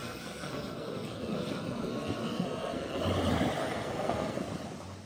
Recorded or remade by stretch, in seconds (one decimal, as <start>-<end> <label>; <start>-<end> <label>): 0.0-3.0 remade; 3.0-3.6 recorded; 3.6-4.4 remade; 4.4-5.1 recorded